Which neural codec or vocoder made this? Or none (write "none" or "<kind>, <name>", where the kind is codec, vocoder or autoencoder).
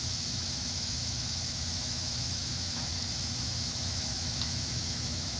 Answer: autoencoder, DAC-VAE